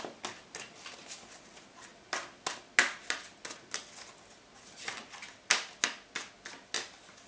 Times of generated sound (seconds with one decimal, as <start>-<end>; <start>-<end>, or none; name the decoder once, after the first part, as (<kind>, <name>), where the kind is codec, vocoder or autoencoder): none